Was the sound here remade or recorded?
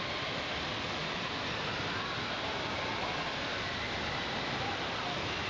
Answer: recorded